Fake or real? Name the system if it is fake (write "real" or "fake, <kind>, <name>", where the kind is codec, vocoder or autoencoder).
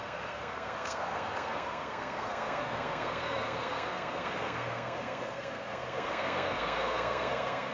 fake, codec, SNAC